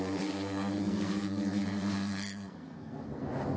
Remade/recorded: remade